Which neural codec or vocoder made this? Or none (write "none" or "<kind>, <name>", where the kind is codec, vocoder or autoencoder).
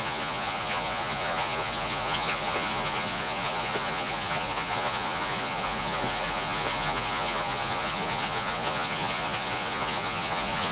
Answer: vocoder, Vocos